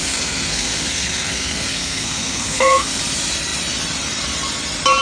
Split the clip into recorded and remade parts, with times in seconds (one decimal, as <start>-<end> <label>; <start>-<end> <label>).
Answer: 0.0-3.0 remade; 3.0-5.0 recorded